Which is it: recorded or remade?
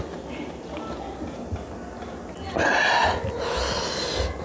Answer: recorded